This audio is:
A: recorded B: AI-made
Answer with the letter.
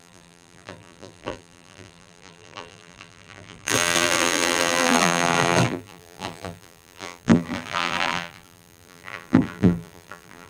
B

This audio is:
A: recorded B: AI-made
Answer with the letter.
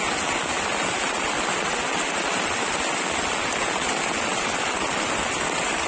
A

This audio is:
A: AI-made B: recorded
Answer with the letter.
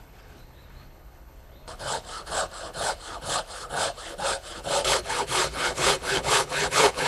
A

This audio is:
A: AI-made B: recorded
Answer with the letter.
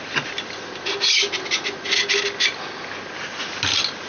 B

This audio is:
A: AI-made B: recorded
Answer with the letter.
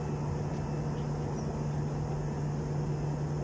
B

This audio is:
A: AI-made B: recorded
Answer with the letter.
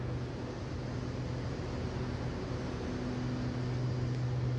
B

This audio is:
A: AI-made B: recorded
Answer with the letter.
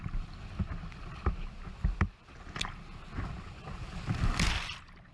B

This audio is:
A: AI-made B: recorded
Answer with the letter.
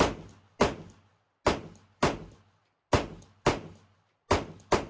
B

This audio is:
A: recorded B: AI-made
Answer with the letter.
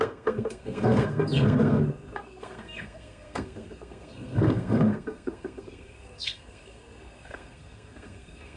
B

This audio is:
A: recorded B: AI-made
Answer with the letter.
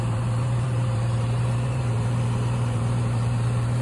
B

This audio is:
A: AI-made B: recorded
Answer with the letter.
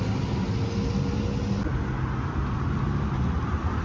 B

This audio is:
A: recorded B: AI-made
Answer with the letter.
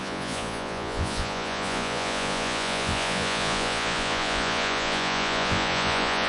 B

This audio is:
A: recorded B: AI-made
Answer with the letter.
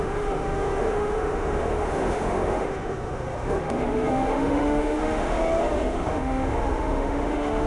B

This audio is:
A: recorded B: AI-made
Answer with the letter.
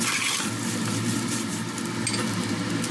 A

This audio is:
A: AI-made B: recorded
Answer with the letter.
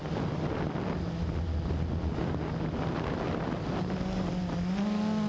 B